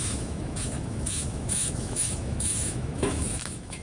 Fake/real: fake